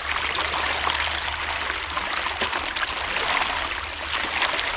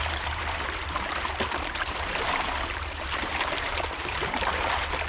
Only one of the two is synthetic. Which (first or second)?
second